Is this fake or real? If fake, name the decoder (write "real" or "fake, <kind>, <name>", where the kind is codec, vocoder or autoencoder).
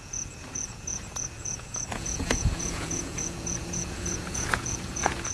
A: fake, vocoder, Vocos